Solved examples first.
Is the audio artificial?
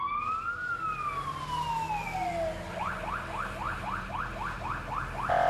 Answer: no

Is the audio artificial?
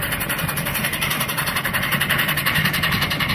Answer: yes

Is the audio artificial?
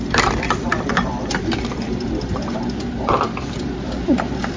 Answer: yes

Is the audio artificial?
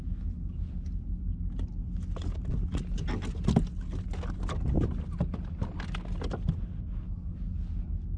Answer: no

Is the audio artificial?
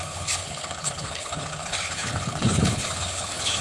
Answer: yes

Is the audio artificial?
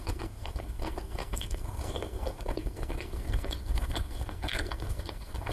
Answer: yes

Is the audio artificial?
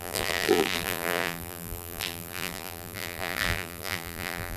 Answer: yes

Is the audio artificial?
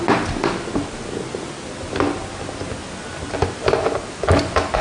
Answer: no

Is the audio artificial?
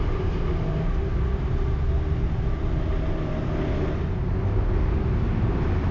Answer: no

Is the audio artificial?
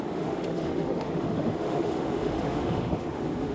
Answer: yes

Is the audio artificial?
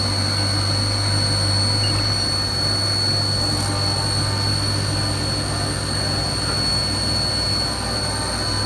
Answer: no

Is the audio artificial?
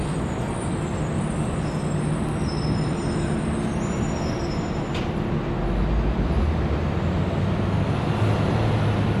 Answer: no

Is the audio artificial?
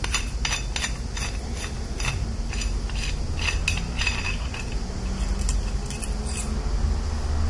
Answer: no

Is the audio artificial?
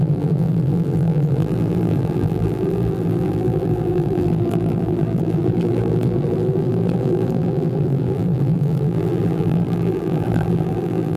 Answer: yes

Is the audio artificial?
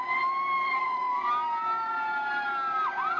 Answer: no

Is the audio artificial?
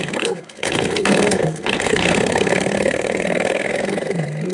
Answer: yes